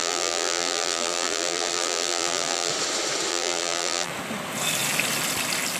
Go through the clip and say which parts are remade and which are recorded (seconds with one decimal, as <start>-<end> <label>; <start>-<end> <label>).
0.0-2.7 remade; 2.7-3.3 recorded; 3.3-4.1 remade; 4.1-5.8 recorded

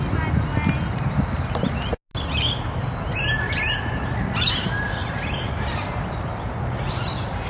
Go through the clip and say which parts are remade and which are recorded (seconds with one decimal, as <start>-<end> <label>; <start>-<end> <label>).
0.0-5.0 recorded; 5.0-6.6 remade; 6.6-7.5 recorded

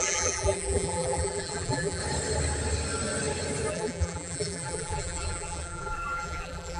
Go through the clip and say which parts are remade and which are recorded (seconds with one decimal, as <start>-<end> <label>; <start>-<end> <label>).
0.0-2.0 remade; 2.0-3.7 recorded; 3.7-6.8 remade